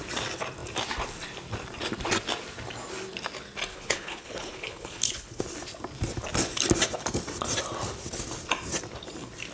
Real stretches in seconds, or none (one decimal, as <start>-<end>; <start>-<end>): 0.0-3.7; 5.4-9.5